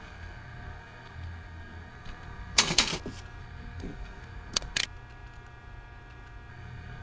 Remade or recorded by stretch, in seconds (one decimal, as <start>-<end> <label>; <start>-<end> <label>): 0.0-2.9 remade; 2.9-3.4 recorded; 3.4-4.8 remade; 4.8-6.5 recorded; 6.5-7.0 remade

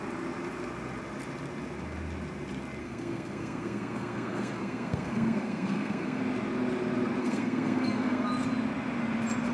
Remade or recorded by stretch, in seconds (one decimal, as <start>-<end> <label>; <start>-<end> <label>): 0.0-2.8 recorded; 2.8-6.2 remade; 6.2-7.2 recorded; 7.2-8.3 remade; 8.3-9.5 recorded

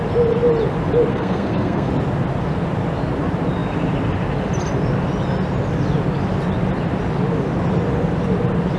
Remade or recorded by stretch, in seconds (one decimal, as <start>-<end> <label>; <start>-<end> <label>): 0.0-1.1 recorded; 1.1-1.9 remade; 1.9-8.8 recorded

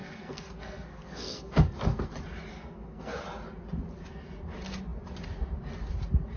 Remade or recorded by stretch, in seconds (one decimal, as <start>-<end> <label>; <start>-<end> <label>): 0.0-2.1 remade; 2.1-2.5 recorded; 2.5-3.2 remade; 3.2-6.4 recorded

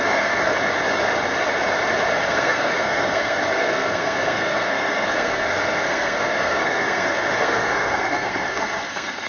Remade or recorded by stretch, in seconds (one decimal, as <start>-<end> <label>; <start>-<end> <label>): 0.0-0.5 remade; 0.5-2.1 recorded; 2.1-9.3 remade

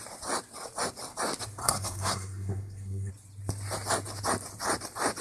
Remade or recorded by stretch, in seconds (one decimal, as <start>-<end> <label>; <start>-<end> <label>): 0.0-1.6 recorded; 1.6-3.1 remade; 3.1-5.2 recorded

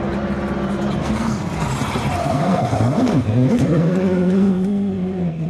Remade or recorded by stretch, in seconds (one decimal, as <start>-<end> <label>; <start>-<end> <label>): 0.0-1.0 recorded; 1.0-1.7 remade; 1.7-2.2 recorded; 2.2-5.5 remade